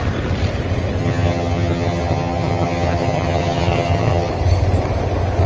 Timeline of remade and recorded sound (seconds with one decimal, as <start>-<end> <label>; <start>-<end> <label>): 0.0-1.0 recorded; 1.0-4.3 remade; 4.3-5.5 recorded